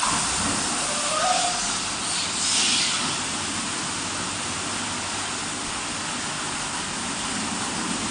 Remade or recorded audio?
recorded